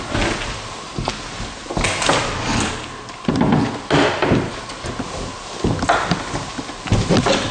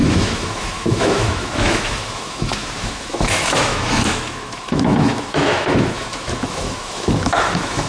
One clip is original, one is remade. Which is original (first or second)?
first